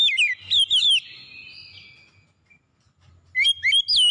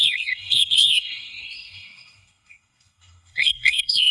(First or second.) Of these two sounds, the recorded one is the first